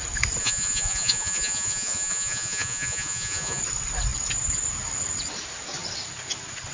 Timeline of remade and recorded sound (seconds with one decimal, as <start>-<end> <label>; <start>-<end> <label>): 0.0-0.4 recorded; 0.4-3.6 remade; 3.6-6.7 recorded